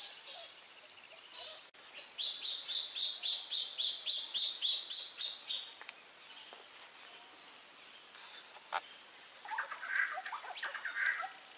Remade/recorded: recorded